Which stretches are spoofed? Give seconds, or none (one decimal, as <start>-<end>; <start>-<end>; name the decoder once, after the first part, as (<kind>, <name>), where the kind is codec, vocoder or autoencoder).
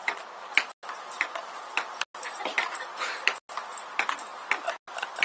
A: none